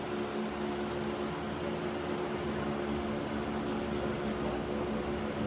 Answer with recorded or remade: recorded